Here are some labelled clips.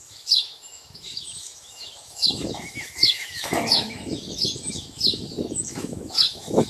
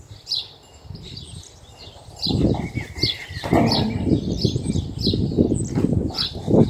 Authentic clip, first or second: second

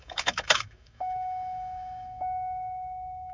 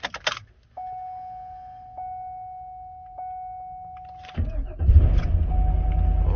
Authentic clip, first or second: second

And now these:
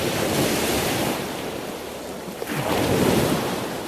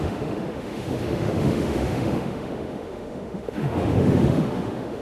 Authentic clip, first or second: first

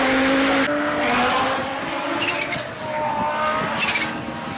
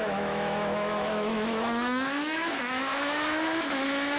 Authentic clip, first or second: first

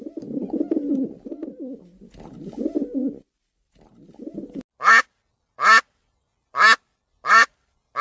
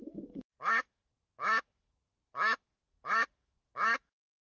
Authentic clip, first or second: first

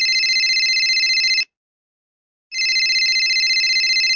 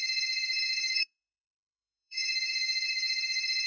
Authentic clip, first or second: first